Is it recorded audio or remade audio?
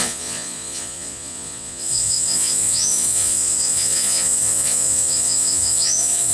remade